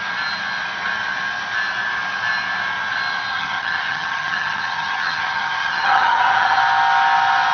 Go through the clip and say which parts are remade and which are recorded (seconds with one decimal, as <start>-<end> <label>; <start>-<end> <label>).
0.0-3.3 recorded; 3.3-6.6 remade; 6.6-7.5 recorded